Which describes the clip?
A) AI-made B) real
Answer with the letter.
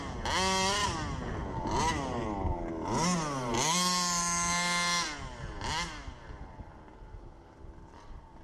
B